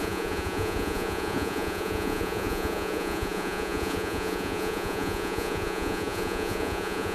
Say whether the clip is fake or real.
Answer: fake